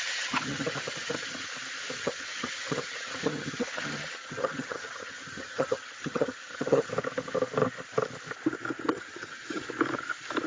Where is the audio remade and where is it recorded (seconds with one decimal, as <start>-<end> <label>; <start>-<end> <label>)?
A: 0.0-1.5 remade; 1.5-2.0 recorded; 2.0-6.9 remade; 6.9-8.9 recorded; 8.9-9.6 remade; 9.6-10.5 recorded